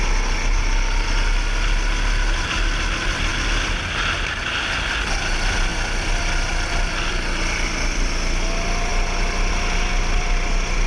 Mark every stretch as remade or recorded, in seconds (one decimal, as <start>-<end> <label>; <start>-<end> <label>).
0.0-10.9 recorded